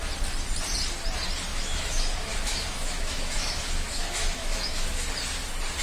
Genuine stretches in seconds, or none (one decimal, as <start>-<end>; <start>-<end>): 0.0-1.5; 5.0-5.8